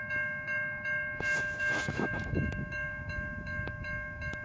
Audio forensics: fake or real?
fake